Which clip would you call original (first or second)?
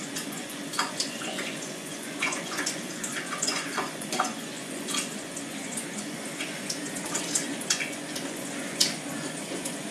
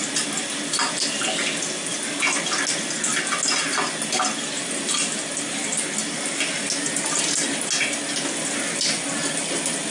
second